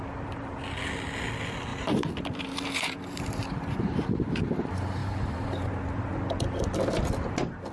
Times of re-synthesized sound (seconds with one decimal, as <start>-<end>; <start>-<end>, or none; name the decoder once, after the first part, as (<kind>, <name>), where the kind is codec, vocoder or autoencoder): 1.7-3.8 (vocoder, BigVGAN v2); 5.0-6.0